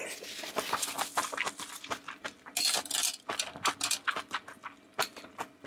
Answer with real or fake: real